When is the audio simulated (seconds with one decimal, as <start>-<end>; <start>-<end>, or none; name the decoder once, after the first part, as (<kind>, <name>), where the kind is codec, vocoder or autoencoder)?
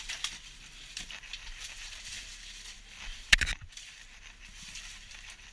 0.0-2.3 (vocoder, BigVGAN v2); 2.8-5.5